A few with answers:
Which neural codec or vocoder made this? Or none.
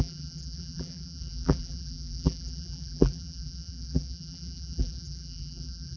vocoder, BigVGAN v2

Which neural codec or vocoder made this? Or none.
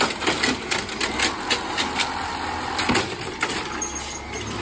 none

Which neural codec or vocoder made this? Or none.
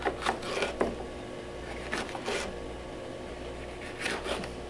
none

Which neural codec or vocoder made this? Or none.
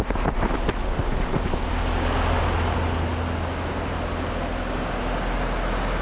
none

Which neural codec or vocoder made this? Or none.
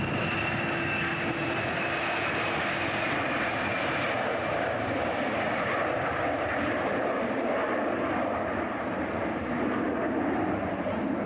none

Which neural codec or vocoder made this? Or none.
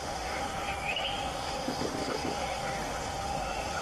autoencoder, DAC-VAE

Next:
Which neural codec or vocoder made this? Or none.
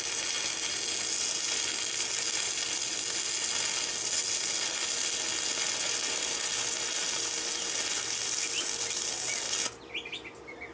none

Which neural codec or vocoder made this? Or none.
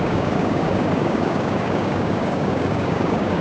codec, DAC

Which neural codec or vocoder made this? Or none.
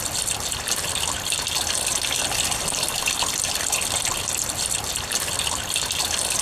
none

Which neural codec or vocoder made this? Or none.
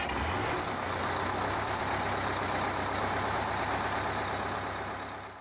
none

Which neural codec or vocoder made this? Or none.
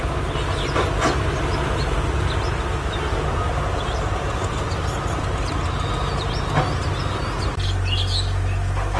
none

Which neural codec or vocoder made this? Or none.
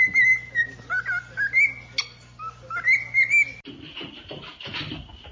none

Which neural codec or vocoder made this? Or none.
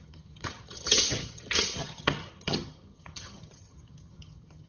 vocoder, HiFi-GAN